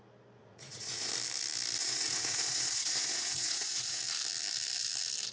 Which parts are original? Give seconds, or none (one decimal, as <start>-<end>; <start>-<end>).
0.0-0.4; 1.1-1.8; 4.0-5.3